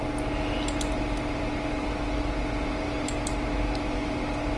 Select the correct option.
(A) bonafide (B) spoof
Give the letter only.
A